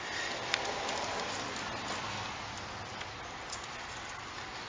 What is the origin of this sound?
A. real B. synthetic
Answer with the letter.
A